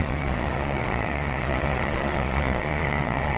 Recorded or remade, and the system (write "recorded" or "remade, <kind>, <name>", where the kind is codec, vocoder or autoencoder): remade, vocoder, Vocos